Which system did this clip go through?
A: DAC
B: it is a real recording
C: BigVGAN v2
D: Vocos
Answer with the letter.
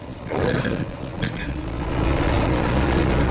D